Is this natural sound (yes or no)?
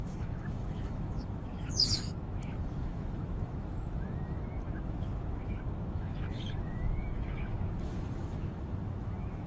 no